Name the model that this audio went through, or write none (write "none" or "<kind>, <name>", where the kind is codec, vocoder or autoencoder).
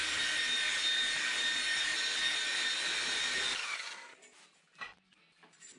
none